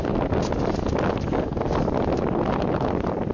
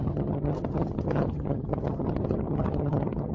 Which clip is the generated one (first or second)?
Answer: second